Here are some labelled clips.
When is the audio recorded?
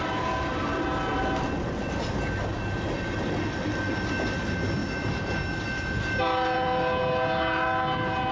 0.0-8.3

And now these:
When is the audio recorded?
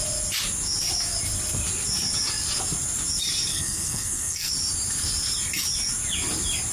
0.0-3.5; 4.5-6.7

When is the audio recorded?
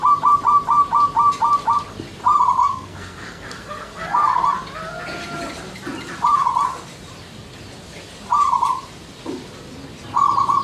0.0-2.6; 4.4-10.6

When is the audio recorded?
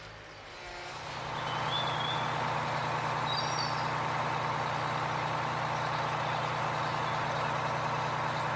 0.0-8.6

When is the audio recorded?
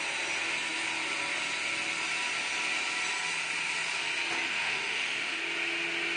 0.0-4.5; 5.4-6.2